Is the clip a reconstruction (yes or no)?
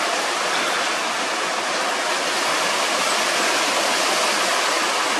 no